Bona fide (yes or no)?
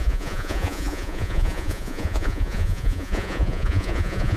no